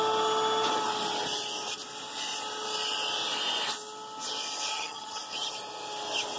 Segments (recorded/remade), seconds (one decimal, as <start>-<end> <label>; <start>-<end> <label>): 0.0-4.7 recorded; 4.7-5.2 remade; 5.2-6.4 recorded